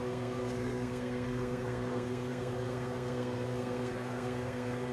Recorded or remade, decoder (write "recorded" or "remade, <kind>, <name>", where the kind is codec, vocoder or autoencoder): remade, codec, SNAC